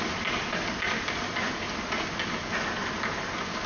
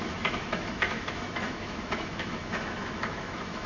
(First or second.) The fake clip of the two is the second